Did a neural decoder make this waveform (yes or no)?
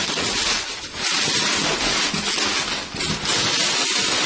no